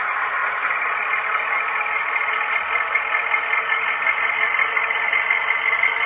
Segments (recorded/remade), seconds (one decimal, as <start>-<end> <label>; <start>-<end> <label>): 0.0-6.1 recorded